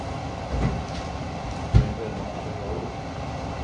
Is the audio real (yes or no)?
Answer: yes